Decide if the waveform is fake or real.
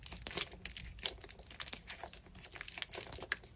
real